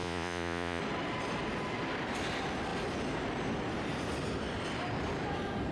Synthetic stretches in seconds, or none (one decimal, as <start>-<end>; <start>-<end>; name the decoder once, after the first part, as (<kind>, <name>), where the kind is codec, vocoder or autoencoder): 0.0-0.8 (vocoder, Vocos)